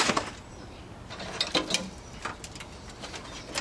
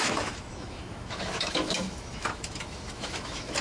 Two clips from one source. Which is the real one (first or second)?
first